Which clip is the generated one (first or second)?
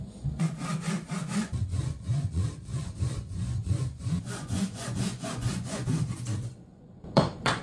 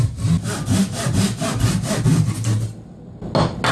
first